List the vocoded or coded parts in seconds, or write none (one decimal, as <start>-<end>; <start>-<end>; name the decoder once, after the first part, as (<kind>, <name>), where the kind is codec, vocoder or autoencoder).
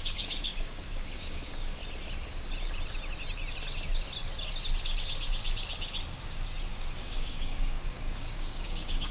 0.0-1.8 (codec, DAC); 6.7-9.1